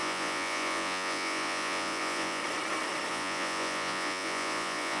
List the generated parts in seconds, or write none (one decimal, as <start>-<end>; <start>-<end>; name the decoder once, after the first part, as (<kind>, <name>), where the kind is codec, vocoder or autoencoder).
0.0-2.4 (vocoder, Vocos); 3.1-5.0